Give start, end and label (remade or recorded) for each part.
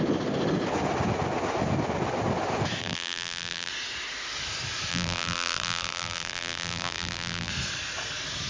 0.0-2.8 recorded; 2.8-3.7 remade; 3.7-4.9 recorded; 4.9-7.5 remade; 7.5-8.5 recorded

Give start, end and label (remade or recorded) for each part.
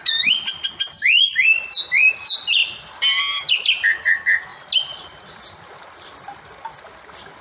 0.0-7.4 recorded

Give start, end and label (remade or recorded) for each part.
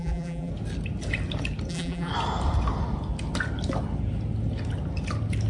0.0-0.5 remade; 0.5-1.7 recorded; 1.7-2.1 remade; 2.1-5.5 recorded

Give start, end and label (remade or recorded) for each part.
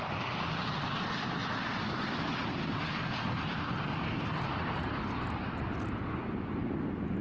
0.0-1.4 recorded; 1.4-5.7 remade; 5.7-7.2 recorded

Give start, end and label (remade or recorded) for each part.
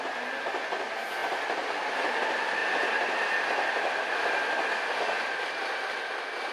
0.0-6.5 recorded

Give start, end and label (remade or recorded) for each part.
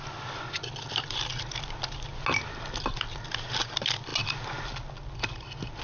0.0-5.8 recorded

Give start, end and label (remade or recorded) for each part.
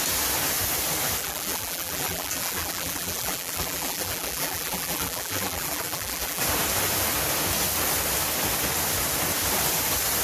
0.0-1.2 recorded; 1.2-6.4 remade; 6.4-10.2 recorded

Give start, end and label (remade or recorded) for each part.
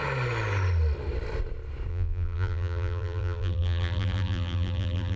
0.0-1.9 recorded; 1.9-5.2 remade